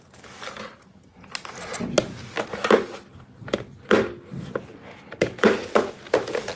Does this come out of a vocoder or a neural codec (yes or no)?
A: no